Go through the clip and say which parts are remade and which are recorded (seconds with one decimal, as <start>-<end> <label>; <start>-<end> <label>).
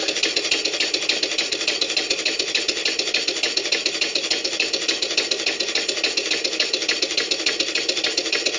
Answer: 0.0-8.6 recorded